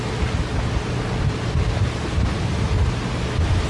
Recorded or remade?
recorded